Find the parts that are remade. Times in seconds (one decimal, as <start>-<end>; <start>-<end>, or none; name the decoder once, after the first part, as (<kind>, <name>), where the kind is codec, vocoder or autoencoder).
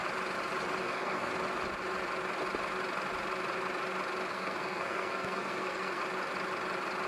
0.8-1.3 (codec, SNAC); 4.3-6.0